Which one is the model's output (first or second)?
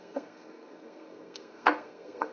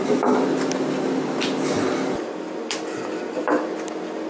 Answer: first